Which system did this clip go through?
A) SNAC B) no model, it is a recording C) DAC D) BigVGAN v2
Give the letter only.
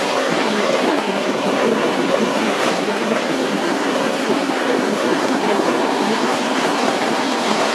A